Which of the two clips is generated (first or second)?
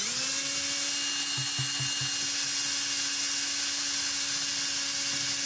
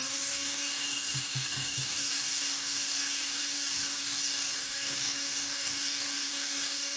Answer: second